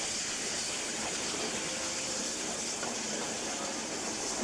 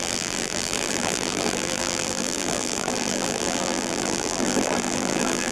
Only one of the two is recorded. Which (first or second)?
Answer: first